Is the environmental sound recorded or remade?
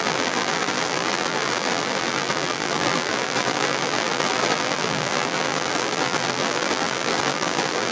remade